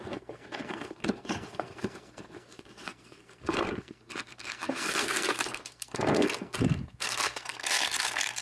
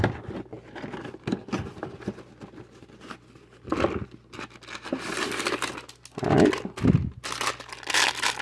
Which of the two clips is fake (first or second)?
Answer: first